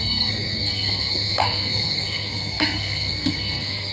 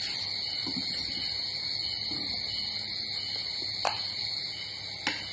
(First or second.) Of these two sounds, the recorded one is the second